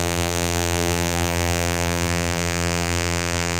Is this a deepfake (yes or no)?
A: yes